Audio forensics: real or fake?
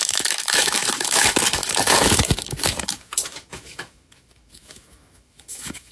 fake